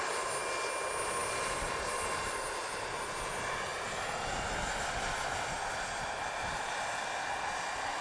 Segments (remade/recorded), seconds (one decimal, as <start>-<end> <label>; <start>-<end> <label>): 0.0-8.0 recorded